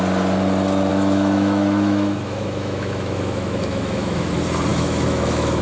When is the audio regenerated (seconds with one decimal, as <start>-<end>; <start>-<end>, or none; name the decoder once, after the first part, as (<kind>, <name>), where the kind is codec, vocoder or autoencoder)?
0.9-4.3 (autoencoder, DAC-VAE); 4.7-5.6